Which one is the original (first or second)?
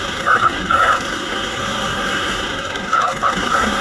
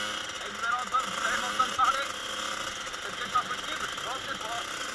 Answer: second